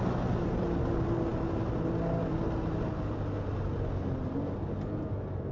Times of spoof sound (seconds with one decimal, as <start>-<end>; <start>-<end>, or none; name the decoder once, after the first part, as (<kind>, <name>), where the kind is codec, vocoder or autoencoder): none